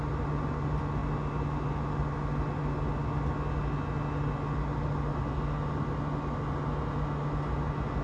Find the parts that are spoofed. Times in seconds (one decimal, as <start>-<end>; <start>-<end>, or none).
none